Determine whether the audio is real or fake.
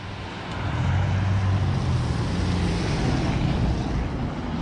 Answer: real